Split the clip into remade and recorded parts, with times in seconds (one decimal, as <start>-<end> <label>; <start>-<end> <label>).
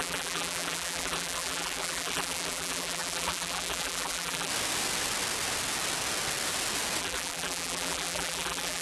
0.0-4.5 remade; 4.5-7.0 recorded; 7.0-8.8 remade